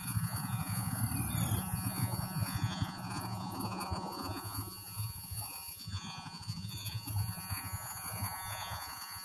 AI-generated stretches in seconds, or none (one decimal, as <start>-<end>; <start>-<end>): 0.0-1.0; 1.6-9.2